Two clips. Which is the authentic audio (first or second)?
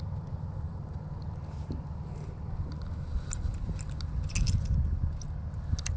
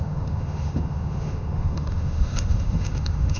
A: first